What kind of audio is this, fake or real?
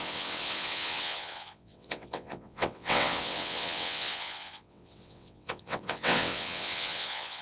fake